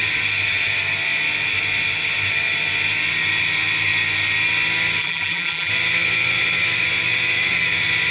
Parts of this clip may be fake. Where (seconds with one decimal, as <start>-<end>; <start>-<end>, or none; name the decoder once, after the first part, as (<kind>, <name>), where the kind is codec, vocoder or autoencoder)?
5.0-5.7 (vocoder, BigVGAN v2)